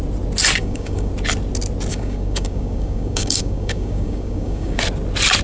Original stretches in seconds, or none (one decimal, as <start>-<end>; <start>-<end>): 0.0-0.6; 1.1-1.9; 4.8-5.4